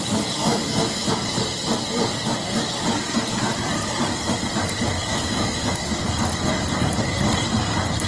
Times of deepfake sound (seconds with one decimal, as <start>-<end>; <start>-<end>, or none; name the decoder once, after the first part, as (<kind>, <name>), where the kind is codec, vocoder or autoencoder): 0.4-1.1 (autoencoder, DAC-VAE); 5.1-5.9